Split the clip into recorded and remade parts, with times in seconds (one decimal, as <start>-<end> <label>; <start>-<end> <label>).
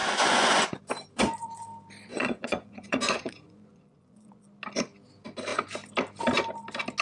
0.0-0.8 remade; 0.8-2.1 recorded; 2.1-4.4 remade; 4.4-7.0 recorded